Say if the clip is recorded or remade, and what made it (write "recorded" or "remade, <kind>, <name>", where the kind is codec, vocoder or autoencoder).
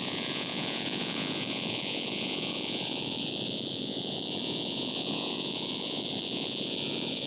remade, vocoder, Vocos